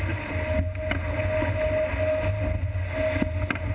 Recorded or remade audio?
recorded